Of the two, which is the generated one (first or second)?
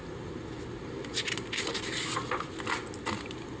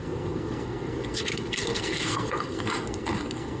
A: second